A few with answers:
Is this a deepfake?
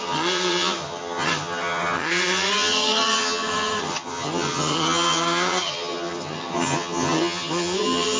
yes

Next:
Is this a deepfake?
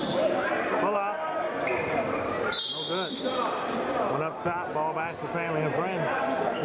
no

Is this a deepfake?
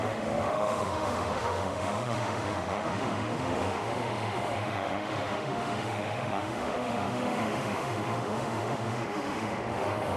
yes